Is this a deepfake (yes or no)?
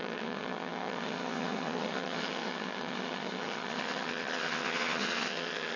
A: yes